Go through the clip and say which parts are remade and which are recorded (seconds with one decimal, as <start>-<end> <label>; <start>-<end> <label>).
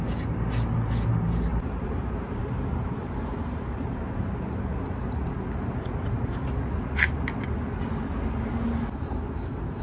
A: 0.0-1.5 recorded; 1.5-6.6 remade; 6.6-9.8 recorded